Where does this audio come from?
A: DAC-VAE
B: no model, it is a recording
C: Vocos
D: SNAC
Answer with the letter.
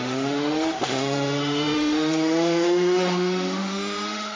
A